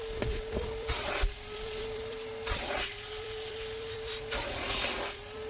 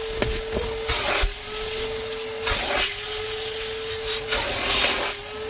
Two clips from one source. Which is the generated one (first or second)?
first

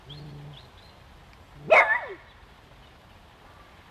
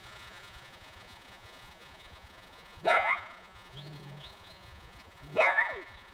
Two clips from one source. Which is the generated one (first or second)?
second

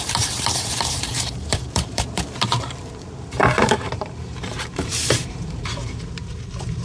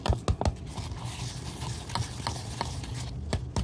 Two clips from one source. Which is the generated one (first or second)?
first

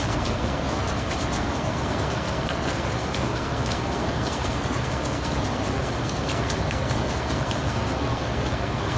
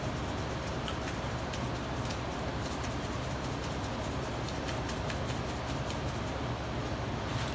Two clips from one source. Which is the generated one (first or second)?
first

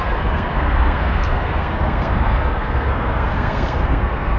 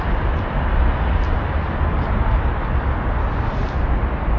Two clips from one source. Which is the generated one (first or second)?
first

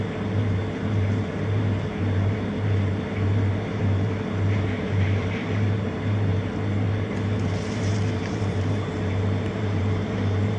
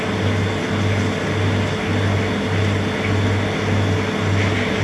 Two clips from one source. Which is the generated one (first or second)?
first